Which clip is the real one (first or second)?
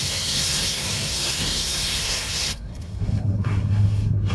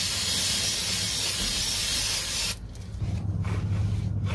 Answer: second